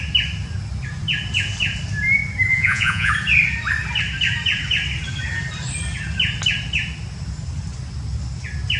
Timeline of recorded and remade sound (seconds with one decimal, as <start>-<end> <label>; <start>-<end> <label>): 0.0-2.5 recorded; 2.5-3.1 remade; 3.1-8.8 recorded

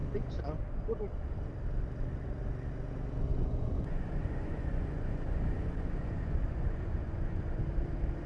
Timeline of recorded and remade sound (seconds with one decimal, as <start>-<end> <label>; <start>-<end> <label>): 0.0-3.3 recorded; 3.3-7.6 remade; 7.6-8.3 recorded

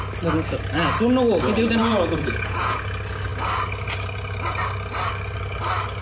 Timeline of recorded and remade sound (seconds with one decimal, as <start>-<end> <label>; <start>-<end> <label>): 0.0-1.8 recorded; 1.8-2.8 remade; 2.8-6.0 recorded